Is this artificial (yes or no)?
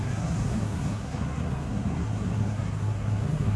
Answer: yes